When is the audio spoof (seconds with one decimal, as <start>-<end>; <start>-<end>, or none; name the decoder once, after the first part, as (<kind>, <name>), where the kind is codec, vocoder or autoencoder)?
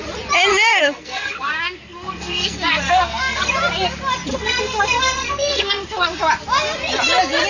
0.5-3.5 (codec, SNAC); 4.3-6.2